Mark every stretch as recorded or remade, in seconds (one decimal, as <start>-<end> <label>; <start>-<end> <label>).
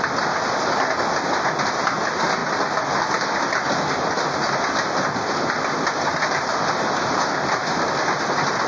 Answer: 0.0-8.7 recorded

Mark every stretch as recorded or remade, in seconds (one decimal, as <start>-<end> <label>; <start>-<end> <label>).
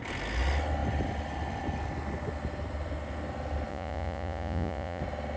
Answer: 0.0-3.7 recorded; 3.7-5.0 remade; 5.0-5.4 recorded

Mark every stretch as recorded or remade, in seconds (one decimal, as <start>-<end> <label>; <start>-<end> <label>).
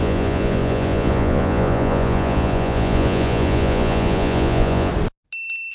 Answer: 0.0-4.9 remade; 4.9-5.7 recorded